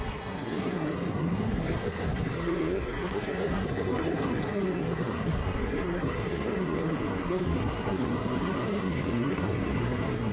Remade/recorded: remade